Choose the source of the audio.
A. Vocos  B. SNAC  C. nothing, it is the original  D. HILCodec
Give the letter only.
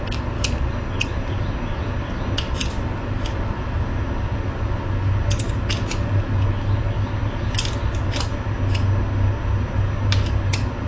C